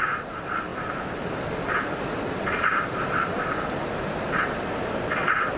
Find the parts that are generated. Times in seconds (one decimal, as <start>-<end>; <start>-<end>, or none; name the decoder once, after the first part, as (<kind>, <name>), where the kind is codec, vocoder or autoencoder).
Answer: none